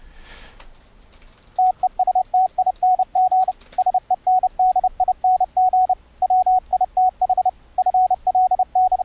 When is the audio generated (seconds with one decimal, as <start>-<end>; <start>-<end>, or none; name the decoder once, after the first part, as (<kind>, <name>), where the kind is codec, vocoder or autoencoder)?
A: 2.2-3.5 (vocoder, BigVGAN v2)